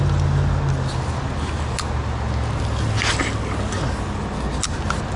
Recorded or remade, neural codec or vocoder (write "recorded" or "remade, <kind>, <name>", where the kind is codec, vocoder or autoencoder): recorded